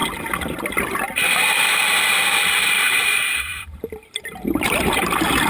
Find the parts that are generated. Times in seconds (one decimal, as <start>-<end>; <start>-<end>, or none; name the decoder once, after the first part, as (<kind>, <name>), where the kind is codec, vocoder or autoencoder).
2.6-5.5 (vocoder, BigVGAN v2)